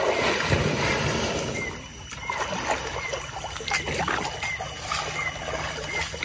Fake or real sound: real